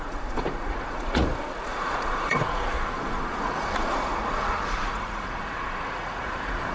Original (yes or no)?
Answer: no